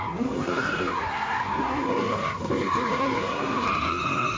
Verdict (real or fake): fake